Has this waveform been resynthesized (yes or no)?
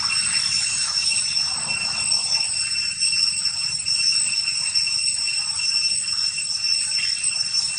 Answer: no